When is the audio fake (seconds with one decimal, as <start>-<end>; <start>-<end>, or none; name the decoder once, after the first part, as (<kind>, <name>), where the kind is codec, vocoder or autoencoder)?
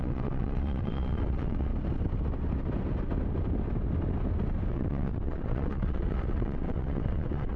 0.0-1.7 (vocoder, WaveNeXt); 4.7-7.6